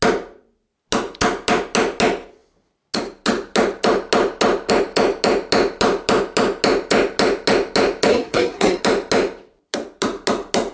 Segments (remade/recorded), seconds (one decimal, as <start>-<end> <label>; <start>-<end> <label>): 0.0-8.1 recorded; 8.1-8.8 remade; 8.8-10.7 recorded

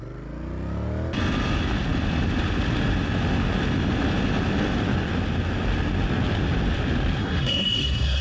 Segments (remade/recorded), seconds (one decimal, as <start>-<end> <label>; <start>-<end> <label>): 0.0-7.2 recorded; 7.2-8.2 remade

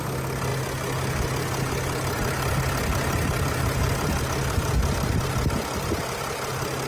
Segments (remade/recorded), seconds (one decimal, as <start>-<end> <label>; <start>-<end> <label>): 0.0-6.9 recorded

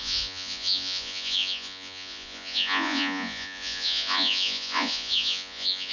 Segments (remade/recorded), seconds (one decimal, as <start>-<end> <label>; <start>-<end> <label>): 0.0-5.9 remade